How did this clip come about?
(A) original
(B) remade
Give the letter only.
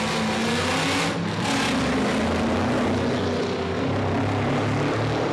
A